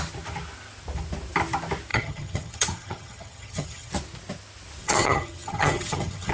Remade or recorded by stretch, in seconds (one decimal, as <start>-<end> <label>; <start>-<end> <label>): 0.0-1.9 recorded; 1.9-3.9 remade; 3.9-4.8 recorded; 4.8-6.3 remade